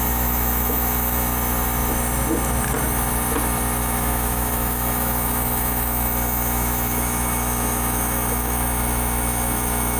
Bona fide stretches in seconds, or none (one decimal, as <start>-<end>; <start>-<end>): 1.3-3.8